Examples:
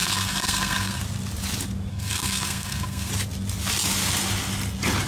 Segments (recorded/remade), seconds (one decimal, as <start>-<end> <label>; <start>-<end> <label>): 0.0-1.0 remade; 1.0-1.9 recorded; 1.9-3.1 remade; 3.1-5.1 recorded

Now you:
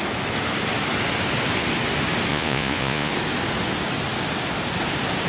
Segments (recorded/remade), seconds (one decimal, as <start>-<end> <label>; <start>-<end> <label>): 0.0-2.3 recorded; 2.3-3.1 remade; 3.1-5.3 recorded

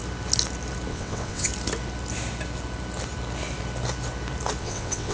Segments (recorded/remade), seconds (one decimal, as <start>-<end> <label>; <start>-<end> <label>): 0.0-0.9 recorded; 0.9-1.5 remade; 1.5-4.6 recorded; 4.6-5.1 remade

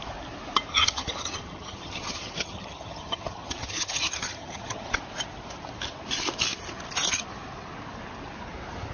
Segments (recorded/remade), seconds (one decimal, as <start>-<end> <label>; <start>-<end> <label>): 0.0-0.7 recorded; 0.7-5.0 remade; 5.0-8.9 recorded

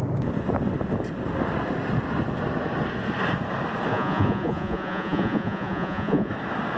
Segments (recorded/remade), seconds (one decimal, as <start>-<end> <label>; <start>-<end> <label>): 0.0-3.9 recorded; 3.9-6.3 remade; 6.3-6.8 recorded

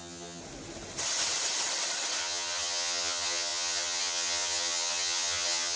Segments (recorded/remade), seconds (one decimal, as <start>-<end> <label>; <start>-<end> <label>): 0.0-0.4 remade; 0.4-2.2 recorded; 2.2-5.8 remade

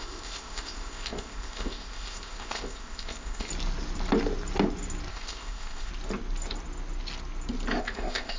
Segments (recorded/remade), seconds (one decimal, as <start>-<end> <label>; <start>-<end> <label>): 0.0-3.5 remade; 3.5-5.1 recorded; 5.1-5.9 remade; 5.9-7.8 recorded; 7.8-8.4 remade